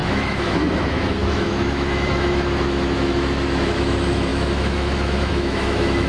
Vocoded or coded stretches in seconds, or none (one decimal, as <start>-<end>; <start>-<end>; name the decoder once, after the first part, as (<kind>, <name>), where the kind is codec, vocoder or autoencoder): 0.0-6.1 (autoencoder, DAC-VAE)